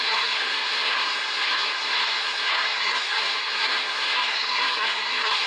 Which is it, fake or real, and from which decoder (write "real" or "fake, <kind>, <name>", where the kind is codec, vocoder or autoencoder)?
fake, codec, SNAC